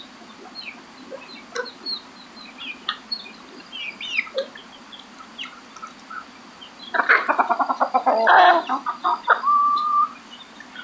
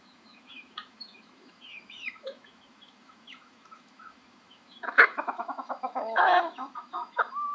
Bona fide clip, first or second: first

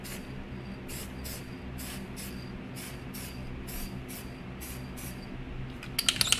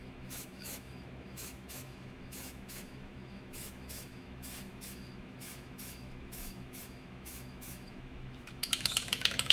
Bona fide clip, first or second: first